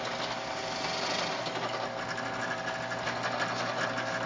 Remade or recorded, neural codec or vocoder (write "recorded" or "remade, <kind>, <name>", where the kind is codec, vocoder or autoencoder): recorded